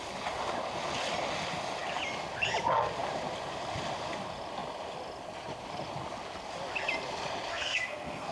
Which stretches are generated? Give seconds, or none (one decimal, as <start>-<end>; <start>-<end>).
7.5-8.3